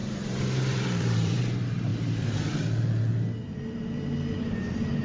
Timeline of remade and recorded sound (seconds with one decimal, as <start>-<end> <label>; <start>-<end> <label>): 0.0-1.4 remade; 1.4-1.9 recorded; 1.9-2.5 remade; 2.5-3.4 recorded; 3.4-5.0 remade